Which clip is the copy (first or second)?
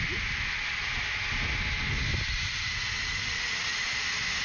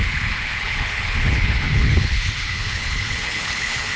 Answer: second